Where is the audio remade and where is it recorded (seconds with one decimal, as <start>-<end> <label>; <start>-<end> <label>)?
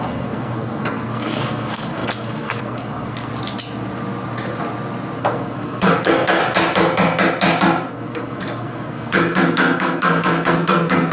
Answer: 0.0-3.3 remade; 3.3-5.2 recorded; 5.2-6.4 remade; 6.4-7.9 recorded; 7.9-11.1 remade